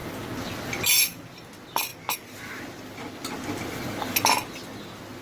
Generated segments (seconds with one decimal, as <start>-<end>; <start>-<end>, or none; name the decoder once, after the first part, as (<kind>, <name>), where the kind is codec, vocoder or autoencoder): none